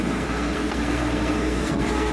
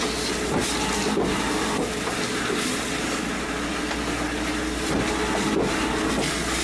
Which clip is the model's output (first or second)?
first